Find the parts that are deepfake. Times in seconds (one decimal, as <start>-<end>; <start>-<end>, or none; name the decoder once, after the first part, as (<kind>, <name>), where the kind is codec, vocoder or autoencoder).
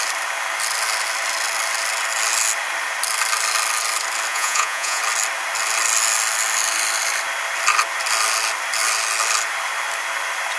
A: 4.3-5.0 (vocoder, Vocos)